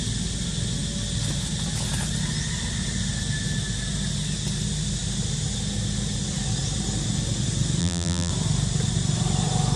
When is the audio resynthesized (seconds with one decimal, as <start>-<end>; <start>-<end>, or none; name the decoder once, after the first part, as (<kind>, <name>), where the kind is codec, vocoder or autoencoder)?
7.8-8.3 (vocoder, BigVGAN v2)